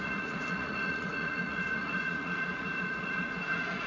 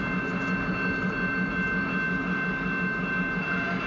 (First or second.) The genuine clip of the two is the second